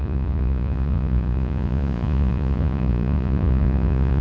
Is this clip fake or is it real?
fake